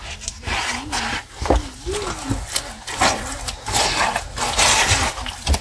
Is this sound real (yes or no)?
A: yes